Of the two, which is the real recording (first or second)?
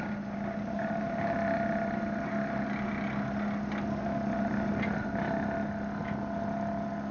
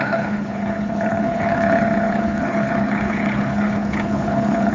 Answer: first